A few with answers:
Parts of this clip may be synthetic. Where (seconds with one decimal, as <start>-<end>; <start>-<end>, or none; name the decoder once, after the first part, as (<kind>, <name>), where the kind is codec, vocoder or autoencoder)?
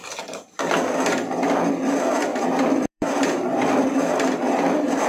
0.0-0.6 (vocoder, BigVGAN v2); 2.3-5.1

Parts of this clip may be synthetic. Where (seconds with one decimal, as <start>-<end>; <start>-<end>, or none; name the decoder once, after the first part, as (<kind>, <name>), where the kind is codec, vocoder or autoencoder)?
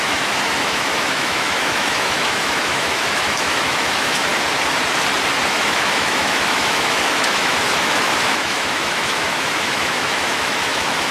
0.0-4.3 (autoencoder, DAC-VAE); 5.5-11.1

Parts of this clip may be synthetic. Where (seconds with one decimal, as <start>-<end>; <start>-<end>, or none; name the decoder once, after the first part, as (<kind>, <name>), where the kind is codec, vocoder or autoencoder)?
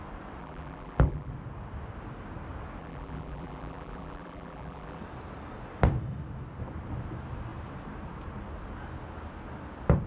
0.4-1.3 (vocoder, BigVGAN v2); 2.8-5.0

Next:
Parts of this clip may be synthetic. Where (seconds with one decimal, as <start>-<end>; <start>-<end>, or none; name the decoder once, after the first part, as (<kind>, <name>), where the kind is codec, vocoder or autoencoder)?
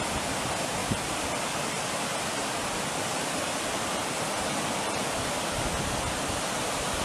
none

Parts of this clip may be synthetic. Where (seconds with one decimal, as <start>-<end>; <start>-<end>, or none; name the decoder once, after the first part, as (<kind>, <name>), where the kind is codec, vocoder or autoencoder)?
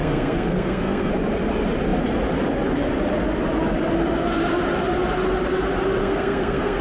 0.0-1.1 (codec, SNAC); 6.0-6.8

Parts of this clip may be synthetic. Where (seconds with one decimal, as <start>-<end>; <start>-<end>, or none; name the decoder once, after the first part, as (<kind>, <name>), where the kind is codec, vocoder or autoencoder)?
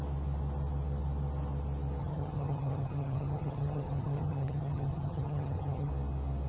2.0-5.9 (vocoder, HiFi-GAN)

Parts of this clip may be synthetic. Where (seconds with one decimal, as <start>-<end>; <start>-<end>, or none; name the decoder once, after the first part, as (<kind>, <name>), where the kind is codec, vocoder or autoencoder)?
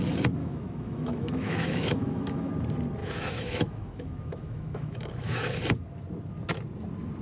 0.4-2.5 (autoencoder, DAC-VAE); 3.0-5.6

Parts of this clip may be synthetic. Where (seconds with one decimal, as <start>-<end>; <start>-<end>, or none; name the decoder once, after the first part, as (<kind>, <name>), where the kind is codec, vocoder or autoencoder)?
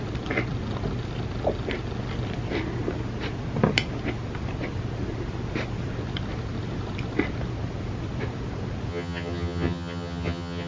8.9-10.7 (vocoder, HiFi-GAN)